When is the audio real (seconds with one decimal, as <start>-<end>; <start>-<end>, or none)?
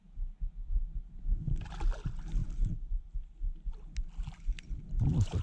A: 0.0-5.4